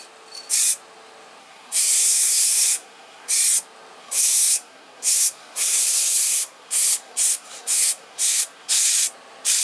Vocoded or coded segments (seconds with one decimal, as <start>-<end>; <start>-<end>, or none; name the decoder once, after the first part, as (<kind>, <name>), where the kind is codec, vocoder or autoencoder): 1.4-3.3 (codec, SNAC); 4.0-8.9